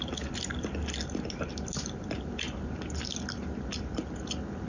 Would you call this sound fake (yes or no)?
no